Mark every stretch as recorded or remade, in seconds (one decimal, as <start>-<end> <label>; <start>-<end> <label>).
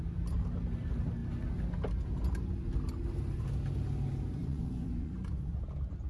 0.0-4.4 recorded; 4.4-5.6 remade; 5.6-6.1 recorded